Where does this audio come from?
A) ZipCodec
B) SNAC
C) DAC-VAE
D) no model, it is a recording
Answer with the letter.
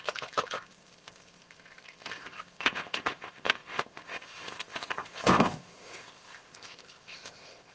A